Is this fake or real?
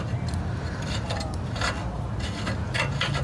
real